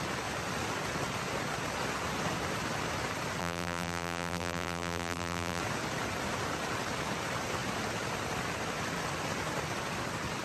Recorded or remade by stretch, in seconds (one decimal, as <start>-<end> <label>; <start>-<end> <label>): 0.0-3.4 recorded; 3.4-5.6 remade; 5.6-10.4 recorded